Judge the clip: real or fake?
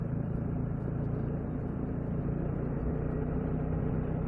fake